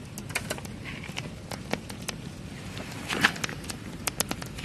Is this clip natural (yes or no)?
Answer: yes